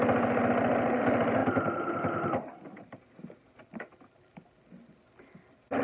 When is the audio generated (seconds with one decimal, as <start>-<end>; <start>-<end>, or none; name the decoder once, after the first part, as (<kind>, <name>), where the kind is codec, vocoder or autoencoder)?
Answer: none